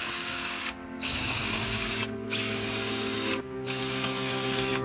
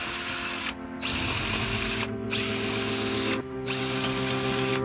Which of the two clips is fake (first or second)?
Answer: first